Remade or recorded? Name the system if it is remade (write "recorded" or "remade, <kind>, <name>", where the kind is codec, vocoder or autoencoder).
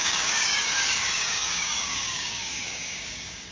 remade, codec, DAC